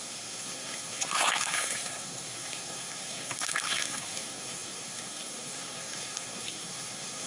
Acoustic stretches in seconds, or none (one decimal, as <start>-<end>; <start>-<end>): none